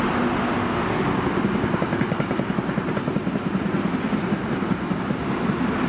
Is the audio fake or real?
real